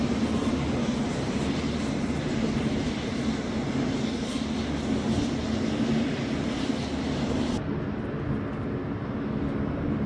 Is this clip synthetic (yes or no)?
no